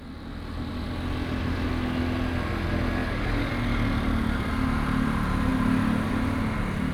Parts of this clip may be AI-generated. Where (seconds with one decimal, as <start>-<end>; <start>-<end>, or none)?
3.0-3.5